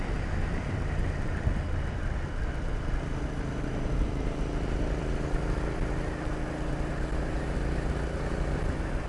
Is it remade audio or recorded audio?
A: recorded